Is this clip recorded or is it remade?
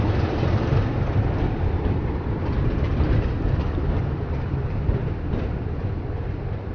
remade